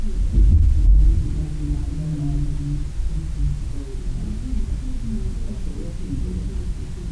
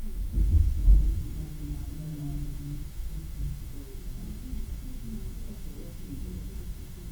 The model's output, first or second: second